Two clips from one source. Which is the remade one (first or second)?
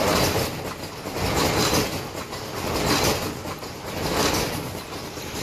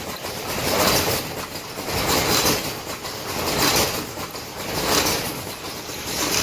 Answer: second